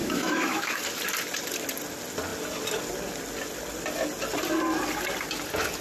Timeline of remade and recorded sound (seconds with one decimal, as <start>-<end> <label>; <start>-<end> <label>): 0.0-0.8 remade; 0.8-5.8 recorded